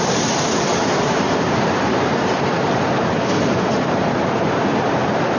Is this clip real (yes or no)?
no